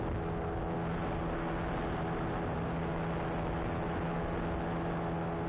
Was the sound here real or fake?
real